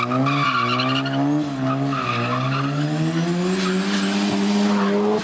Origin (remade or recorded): recorded